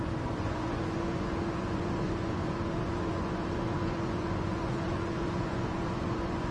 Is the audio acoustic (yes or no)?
no